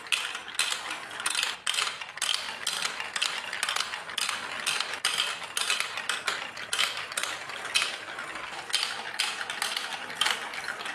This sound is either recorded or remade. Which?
recorded